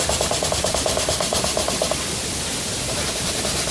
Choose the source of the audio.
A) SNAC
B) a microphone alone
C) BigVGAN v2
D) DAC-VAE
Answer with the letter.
B